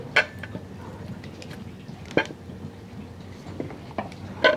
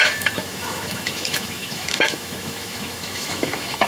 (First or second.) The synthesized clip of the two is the second